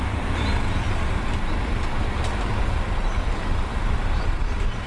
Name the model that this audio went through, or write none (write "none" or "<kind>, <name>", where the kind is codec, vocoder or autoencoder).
none